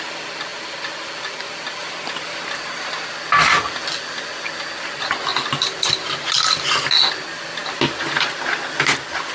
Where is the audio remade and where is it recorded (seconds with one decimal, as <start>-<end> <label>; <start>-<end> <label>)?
0.0-9.3 recorded